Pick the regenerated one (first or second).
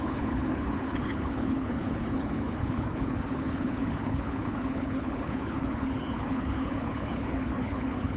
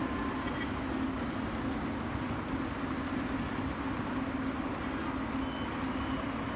first